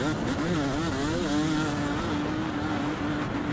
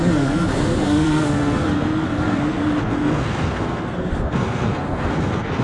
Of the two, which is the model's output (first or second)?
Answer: second